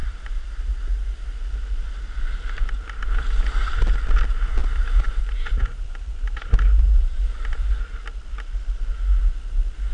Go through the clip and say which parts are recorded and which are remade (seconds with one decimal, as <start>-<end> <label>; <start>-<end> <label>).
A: 0.0-0.7 remade; 0.7-4.6 recorded; 4.6-7.7 remade; 7.7-9.9 recorded